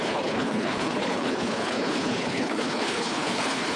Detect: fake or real fake